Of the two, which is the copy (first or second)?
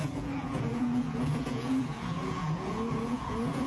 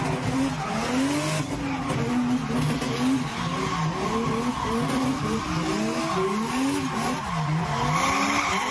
first